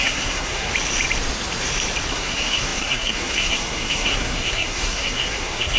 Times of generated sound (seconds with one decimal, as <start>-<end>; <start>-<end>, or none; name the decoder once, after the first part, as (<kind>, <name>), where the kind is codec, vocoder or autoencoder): 0.0-0.7 (codec, SNAC); 2.1-5.8